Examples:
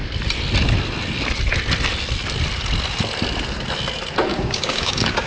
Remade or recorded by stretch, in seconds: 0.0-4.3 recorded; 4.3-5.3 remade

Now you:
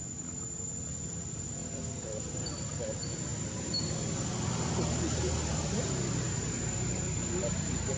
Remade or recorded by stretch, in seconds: 0.0-1.6 recorded; 1.6-2.4 remade; 2.4-5.5 recorded; 5.5-6.1 remade; 6.1-8.0 recorded

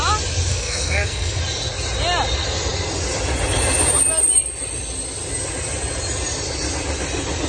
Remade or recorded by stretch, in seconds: 0.0-0.5 recorded; 0.5-1.4 remade; 1.4-7.5 recorded

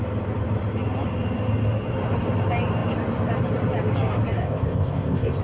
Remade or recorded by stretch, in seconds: 0.0-4.4 recorded; 4.4-5.4 remade

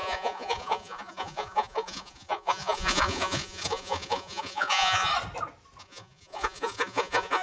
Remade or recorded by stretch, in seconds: 0.0-5.1 remade; 5.1-5.8 recorded; 5.8-7.4 remade

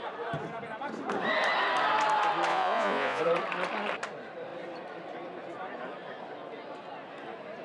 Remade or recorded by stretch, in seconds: 0.0-2.5 recorded; 2.5-3.2 remade; 3.2-7.6 recorded